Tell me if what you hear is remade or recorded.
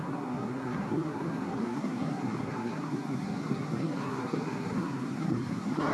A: remade